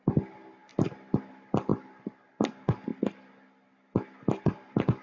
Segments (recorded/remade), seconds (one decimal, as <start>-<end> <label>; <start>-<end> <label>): 0.0-5.0 recorded